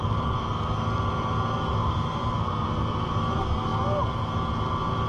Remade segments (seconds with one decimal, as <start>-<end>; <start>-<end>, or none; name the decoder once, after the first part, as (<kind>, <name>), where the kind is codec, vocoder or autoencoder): none